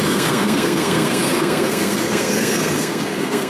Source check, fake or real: fake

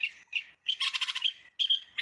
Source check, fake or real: real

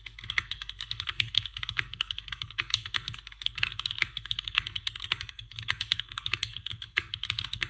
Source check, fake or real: fake